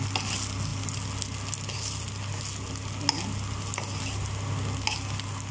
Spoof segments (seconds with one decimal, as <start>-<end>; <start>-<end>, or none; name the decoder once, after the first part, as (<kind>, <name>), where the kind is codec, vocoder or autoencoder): none